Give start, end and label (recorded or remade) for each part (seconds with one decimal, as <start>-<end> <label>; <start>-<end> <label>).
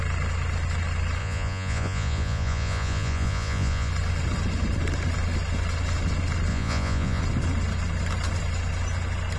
0.0-1.2 recorded; 1.2-3.9 remade; 3.9-6.5 recorded; 6.5-7.2 remade; 7.2-9.4 recorded